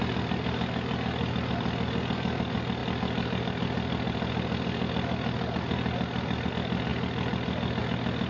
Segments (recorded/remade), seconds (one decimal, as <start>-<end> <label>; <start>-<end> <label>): 0.0-8.3 recorded

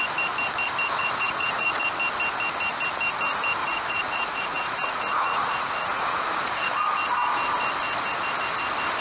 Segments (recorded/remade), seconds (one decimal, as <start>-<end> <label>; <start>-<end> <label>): 0.0-1.0 recorded; 1.0-1.8 remade; 1.8-3.6 recorded; 3.6-6.7 remade; 6.7-9.0 recorded

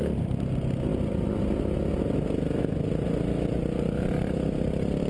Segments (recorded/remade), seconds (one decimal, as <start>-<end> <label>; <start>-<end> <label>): 0.0-5.1 recorded

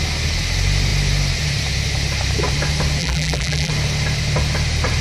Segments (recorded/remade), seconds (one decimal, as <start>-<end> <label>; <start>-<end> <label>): 0.0-3.0 recorded; 3.0-3.7 remade; 3.7-5.0 recorded

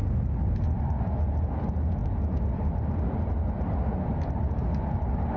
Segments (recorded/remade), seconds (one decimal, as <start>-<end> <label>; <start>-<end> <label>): 0.0-5.4 recorded

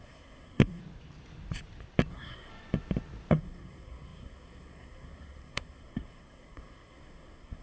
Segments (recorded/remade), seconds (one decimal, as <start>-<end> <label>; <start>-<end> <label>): 0.0-0.8 remade; 0.8-2.1 recorded; 2.1-2.5 remade; 2.5-3.3 recorded; 3.3-7.6 remade